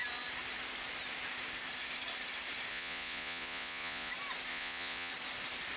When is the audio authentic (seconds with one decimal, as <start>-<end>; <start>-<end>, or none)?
0.0-2.7; 4.1-4.5; 5.1-5.8